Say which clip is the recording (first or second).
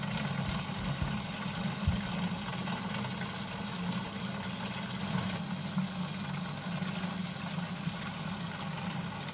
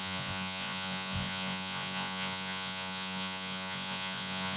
first